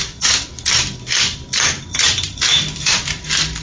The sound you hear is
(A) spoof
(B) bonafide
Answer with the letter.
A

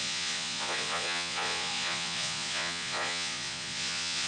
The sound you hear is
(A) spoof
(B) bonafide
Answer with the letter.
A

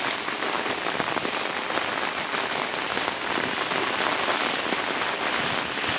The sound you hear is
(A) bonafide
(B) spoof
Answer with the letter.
A